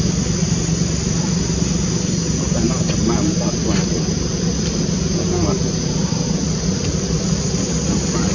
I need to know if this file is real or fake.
real